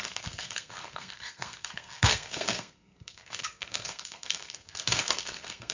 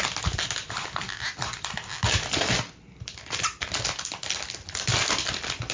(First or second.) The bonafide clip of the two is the second